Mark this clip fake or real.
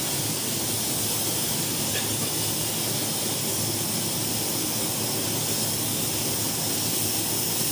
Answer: real